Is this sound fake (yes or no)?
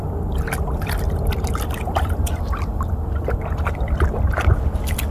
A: yes